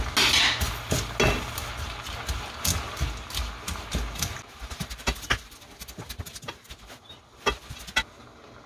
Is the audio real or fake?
real